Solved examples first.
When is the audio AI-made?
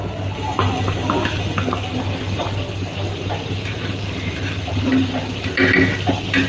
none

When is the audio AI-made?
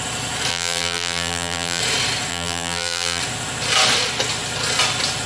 0.5-1.8 (vocoder, BigVGAN v2); 2.3-3.2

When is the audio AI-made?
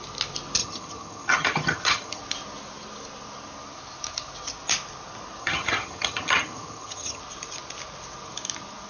0.6-2.2 (vocoder, HiFi-GAN); 5.4-7.2